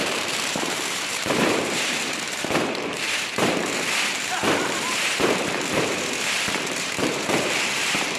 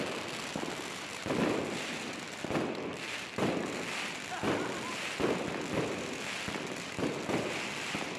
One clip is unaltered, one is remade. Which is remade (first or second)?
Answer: first